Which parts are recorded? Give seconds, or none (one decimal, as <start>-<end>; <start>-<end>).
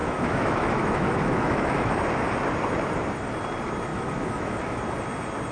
1.9-3.9; 4.8-5.5